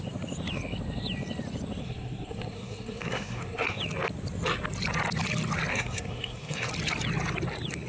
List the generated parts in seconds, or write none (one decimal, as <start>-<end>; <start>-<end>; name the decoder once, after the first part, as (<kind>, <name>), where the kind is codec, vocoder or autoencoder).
1.8-3.8 (codec, SNAC); 5.7-6.7